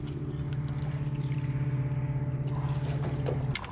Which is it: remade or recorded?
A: recorded